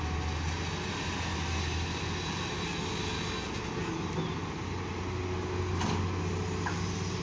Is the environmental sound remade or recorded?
recorded